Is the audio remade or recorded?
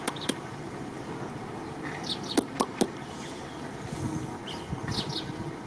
recorded